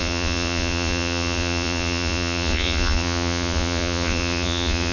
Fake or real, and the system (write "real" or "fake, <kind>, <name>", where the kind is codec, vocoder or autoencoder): fake, vocoder, Vocos